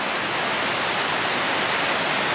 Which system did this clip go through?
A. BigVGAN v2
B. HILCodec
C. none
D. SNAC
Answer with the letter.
C